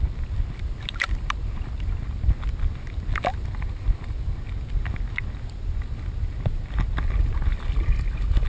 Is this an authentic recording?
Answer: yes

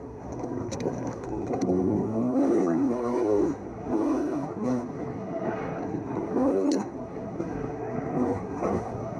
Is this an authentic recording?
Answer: no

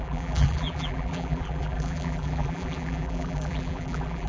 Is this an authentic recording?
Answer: no